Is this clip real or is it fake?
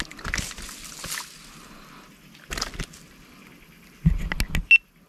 real